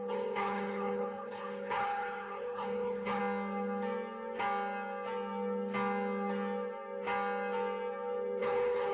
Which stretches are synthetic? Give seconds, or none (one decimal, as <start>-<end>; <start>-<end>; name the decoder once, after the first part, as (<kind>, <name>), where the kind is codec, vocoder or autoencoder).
0.0-3.2 (codec, HILCodec); 8.4-8.9